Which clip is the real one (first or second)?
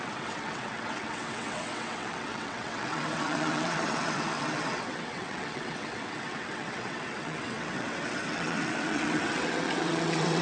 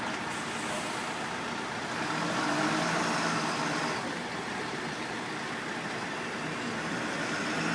second